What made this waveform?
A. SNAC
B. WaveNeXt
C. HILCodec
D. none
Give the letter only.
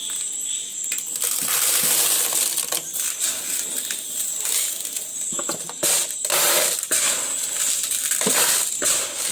D